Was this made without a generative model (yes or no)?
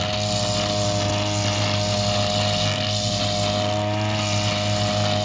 yes